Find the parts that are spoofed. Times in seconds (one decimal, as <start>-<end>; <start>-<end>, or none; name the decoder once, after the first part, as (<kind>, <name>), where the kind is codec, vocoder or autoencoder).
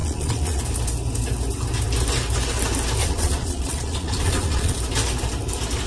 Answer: 0.0-0.6 (vocoder, Vocos); 3.0-4.8